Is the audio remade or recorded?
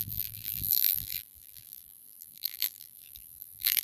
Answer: remade